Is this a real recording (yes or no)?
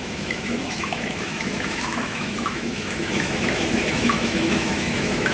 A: no